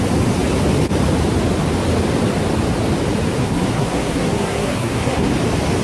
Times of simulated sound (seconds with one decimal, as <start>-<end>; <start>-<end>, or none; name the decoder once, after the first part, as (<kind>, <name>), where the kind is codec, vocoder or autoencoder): 3.4-5.3 (codec, SNAC)